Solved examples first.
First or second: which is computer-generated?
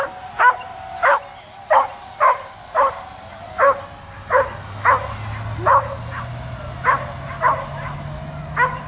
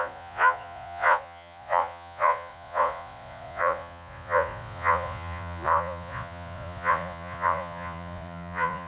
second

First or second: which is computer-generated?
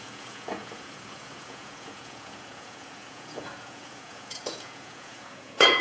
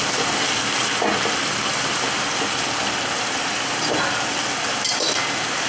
first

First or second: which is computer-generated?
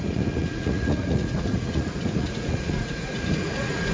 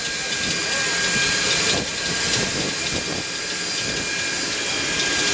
first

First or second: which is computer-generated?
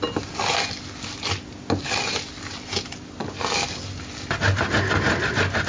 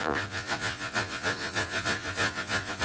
second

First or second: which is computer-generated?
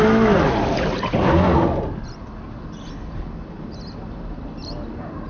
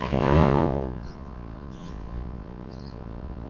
second